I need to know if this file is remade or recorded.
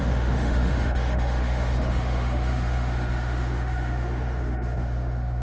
remade